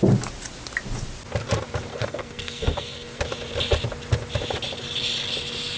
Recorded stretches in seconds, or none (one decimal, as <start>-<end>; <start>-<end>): 0.0-1.9; 3.2-5.8